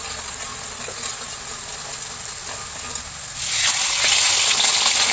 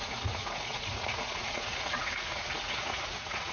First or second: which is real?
first